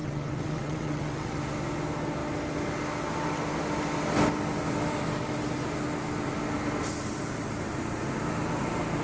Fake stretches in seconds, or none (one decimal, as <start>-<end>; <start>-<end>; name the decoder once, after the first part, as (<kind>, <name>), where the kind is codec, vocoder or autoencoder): 0.0-1.4 (vocoder, WaveNeXt)